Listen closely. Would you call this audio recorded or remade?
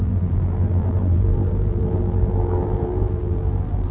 remade